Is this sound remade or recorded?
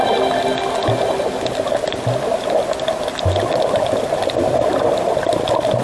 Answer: recorded